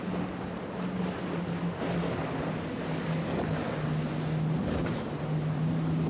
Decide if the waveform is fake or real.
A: real